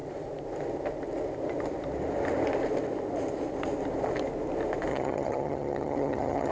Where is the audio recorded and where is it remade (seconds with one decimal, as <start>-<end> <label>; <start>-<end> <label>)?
0.0-4.9 recorded; 4.9-6.5 remade